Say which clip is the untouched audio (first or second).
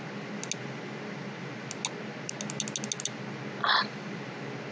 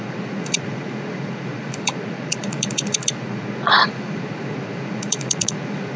first